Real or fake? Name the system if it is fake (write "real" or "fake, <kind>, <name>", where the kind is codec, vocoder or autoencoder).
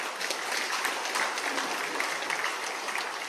real